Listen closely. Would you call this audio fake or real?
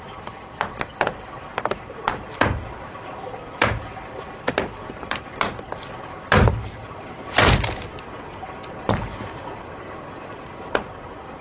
real